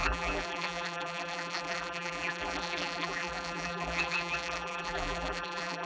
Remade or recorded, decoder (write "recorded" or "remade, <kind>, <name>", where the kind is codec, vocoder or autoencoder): remade, vocoder, BigVGAN v2